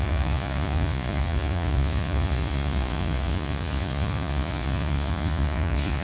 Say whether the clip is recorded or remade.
remade